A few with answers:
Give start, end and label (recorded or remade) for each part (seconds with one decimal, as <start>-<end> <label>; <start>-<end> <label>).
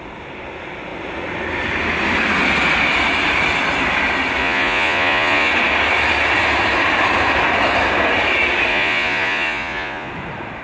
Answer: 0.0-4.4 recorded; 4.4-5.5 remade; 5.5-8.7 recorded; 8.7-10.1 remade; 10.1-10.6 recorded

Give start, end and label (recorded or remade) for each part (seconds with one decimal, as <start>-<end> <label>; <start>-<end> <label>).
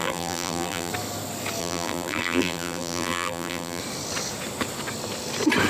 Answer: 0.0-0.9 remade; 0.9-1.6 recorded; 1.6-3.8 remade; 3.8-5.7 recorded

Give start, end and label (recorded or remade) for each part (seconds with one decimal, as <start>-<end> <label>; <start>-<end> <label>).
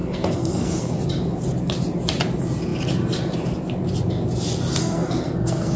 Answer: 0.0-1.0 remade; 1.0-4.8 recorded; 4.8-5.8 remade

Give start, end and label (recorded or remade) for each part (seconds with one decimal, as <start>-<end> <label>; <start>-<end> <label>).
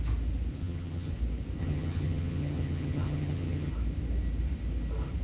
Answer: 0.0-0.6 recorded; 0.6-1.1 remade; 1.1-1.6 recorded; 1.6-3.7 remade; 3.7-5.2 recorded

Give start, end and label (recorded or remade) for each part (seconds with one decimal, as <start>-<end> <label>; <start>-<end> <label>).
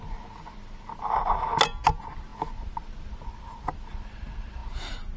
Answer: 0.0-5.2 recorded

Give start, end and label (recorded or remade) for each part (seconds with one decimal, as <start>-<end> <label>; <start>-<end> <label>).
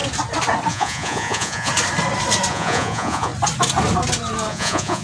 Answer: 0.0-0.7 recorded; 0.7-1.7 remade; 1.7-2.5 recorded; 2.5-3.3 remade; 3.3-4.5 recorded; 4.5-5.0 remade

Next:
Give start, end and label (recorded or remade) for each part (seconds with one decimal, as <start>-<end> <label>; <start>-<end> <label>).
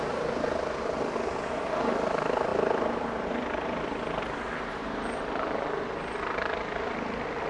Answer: 0.0-2.5 recorded; 2.5-4.2 remade; 4.2-7.5 recorded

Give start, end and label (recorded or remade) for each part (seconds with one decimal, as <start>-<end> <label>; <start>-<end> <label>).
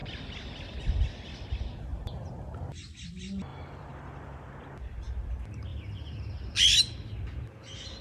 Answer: 0.0-1.9 recorded; 1.9-2.6 remade; 2.6-3.5 recorded; 3.5-4.5 remade; 4.5-5.7 recorded; 5.7-6.2 remade; 6.2-8.0 recorded